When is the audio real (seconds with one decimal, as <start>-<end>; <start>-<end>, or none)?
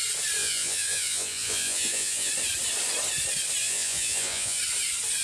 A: 0.0-0.4; 2.3-3.6; 4.6-5.2